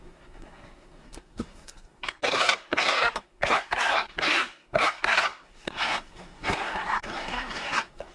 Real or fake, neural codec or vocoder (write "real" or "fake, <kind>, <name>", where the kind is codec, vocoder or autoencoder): fake, codec, SNAC